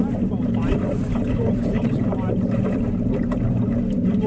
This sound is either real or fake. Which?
fake